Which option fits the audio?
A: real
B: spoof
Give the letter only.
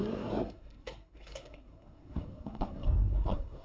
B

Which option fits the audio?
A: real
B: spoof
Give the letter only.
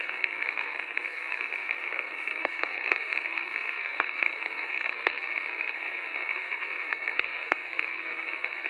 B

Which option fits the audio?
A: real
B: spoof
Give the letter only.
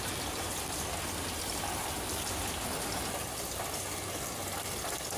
A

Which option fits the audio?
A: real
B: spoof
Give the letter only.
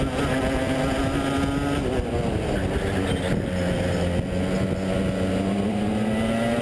A